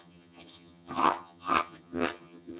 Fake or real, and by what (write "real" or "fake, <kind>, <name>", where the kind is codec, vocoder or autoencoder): fake, vocoder, HiFi-GAN